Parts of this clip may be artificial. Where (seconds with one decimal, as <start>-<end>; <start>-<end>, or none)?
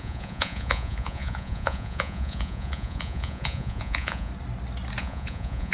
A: 0.0-4.3; 5.0-5.7